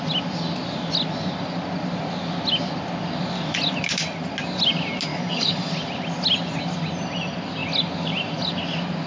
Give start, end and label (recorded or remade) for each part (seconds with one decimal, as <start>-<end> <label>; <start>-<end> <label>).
0.0-5.1 recorded; 5.1-5.7 remade; 5.7-9.1 recorded

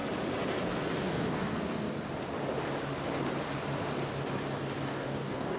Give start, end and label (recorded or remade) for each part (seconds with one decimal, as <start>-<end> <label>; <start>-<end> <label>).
0.0-0.9 recorded; 0.9-1.5 remade; 1.5-4.9 recorded; 4.9-5.6 remade

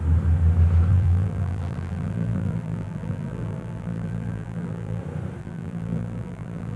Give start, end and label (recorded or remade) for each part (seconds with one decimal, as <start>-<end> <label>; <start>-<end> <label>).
0.0-0.9 recorded; 0.9-5.0 remade; 5.0-5.4 recorded; 5.4-6.8 remade

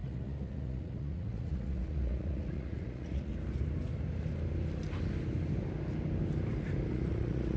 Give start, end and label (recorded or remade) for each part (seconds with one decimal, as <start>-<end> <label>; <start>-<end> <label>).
0.0-3.3 remade; 3.3-6.9 recorded; 6.9-7.6 remade

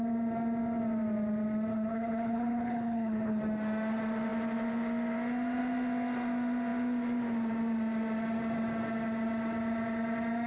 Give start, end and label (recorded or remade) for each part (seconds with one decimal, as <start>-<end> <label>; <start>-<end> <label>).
0.0-1.7 recorded; 1.7-3.4 remade; 3.4-10.5 recorded